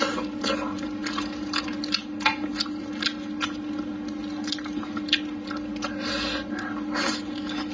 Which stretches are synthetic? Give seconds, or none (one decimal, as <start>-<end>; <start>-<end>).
none